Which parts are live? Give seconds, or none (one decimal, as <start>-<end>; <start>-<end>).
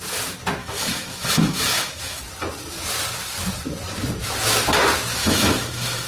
0.0-0.6; 2.2-5.2